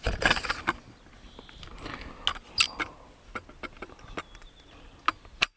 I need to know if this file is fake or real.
real